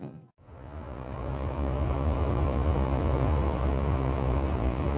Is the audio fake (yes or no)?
yes